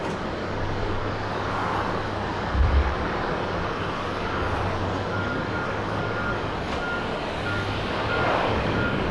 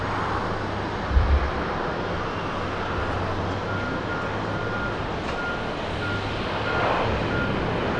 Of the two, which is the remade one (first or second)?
first